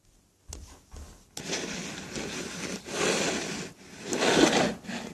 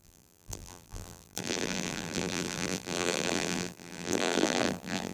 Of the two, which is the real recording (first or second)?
first